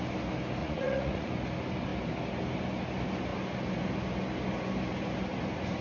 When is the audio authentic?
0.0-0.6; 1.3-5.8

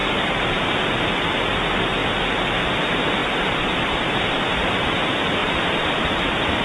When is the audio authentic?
0.6-3.2; 4.7-5.4

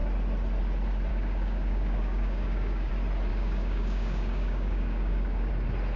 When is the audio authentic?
0.0-1.1; 2.9-3.3; 5.5-6.0

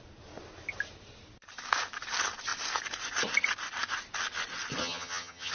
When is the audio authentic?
0.0-4.8

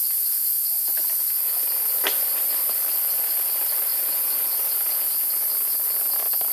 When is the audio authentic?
0.0-3.9; 5.3-6.5

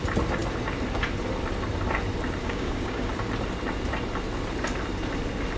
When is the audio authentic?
0.0-2.4; 3.1-5.6

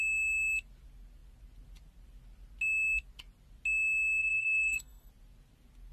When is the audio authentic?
0.0-4.2; 5.1-5.9